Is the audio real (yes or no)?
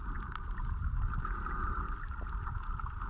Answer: yes